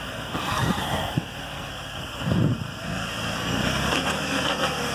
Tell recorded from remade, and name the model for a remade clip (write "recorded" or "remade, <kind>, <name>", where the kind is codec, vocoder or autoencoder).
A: remade, codec, SNAC